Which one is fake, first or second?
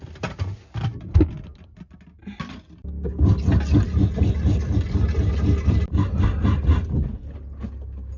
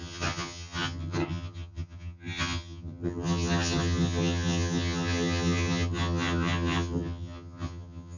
second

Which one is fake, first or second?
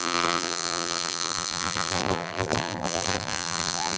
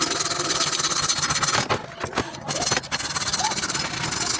first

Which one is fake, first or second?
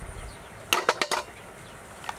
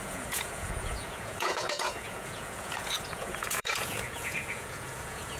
second